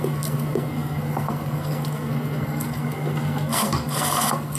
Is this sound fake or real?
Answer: fake